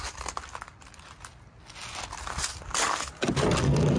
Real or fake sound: real